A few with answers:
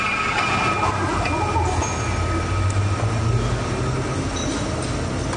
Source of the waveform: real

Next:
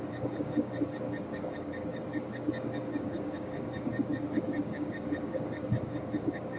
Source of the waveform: fake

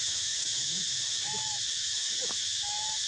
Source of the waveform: fake